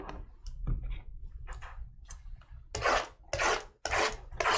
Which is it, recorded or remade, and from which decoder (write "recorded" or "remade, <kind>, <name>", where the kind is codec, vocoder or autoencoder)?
recorded